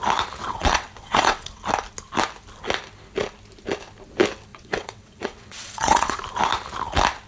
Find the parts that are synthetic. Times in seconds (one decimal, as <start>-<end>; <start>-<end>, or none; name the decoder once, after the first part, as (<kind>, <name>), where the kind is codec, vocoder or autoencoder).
0.4-1.6 (vocoder, WaveNeXt); 4.5-6.2